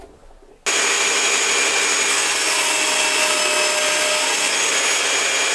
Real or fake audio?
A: real